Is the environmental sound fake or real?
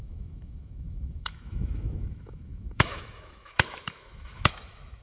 fake